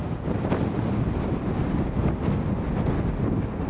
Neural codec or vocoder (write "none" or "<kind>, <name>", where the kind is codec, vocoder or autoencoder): none